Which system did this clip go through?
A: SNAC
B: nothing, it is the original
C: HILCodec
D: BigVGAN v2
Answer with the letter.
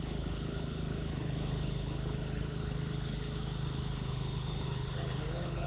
C